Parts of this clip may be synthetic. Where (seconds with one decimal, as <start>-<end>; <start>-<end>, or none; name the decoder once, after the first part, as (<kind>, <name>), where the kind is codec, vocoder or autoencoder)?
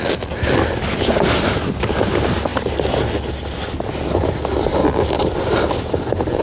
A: none